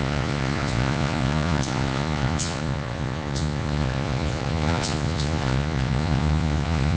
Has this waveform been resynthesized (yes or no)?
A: yes